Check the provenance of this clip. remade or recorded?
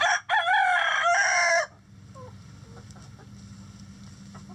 recorded